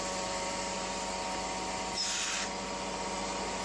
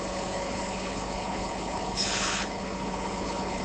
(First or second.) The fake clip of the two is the second